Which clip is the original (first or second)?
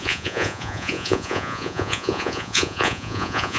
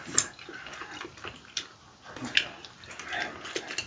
second